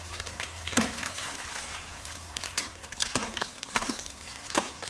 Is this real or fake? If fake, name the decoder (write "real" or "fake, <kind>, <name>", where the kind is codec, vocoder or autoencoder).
fake, codec, SNAC